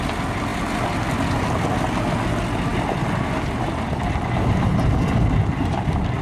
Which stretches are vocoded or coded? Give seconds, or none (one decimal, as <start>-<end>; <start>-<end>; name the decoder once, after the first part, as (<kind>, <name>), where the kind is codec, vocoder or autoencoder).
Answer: none